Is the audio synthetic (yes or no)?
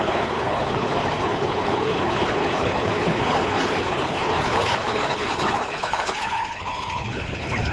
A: yes